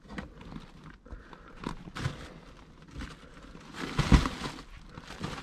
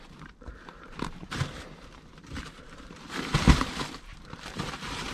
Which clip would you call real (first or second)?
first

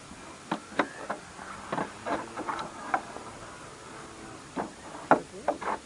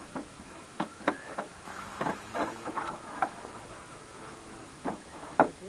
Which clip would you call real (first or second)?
first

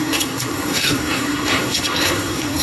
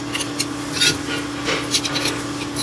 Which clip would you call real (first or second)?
second